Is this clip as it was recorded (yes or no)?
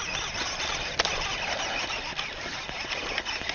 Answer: yes